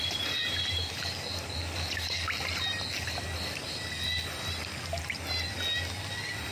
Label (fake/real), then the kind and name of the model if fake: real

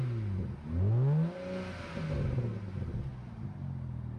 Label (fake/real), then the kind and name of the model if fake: real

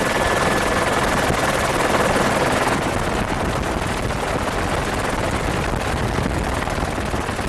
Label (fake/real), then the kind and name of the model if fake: real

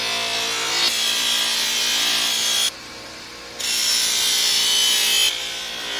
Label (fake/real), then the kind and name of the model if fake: real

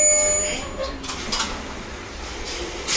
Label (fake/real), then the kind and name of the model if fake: real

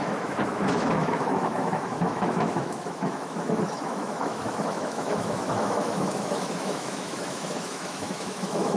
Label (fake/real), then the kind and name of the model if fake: fake, autoencoder, DAC-VAE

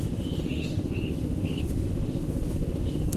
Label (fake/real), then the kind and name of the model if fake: fake, autoencoder, DAC-VAE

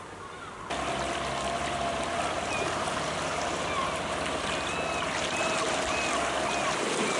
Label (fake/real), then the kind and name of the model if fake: real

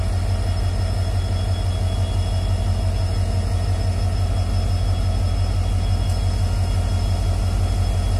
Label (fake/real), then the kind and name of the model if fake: real